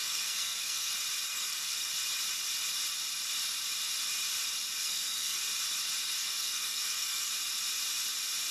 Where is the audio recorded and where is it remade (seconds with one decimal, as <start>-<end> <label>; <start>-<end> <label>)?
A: 0.0-0.9 remade; 0.9-1.3 recorded; 1.3-1.9 remade; 1.9-4.8 recorded; 4.8-5.4 remade; 5.4-6.2 recorded; 6.2-7.3 remade; 7.3-8.5 recorded